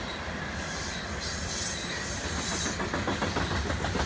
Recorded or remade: recorded